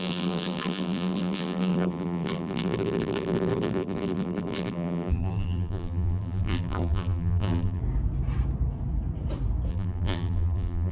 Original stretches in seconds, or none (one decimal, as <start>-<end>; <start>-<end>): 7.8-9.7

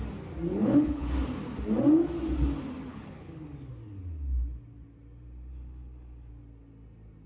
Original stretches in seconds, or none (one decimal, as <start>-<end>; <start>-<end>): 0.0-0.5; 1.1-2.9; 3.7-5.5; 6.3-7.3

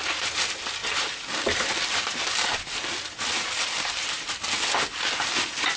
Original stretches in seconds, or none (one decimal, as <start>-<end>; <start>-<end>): 0.0-0.8; 4.3-5.8

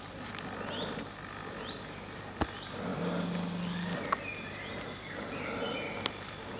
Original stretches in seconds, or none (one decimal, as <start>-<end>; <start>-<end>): 0.0-6.6

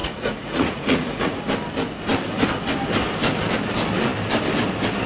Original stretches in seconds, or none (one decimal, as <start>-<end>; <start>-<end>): 1.4-5.1

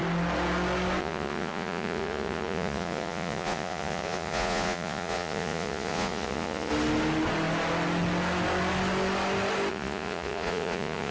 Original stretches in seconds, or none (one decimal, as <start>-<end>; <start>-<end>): 0.0-1.0; 6.7-9.7

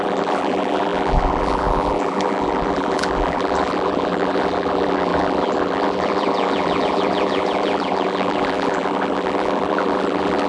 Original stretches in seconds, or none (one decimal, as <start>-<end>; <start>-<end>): none